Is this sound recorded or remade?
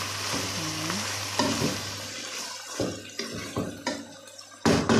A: recorded